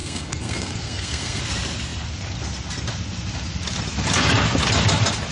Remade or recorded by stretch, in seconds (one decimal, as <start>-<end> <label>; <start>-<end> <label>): 0.0-1.4 remade; 1.4-5.3 recorded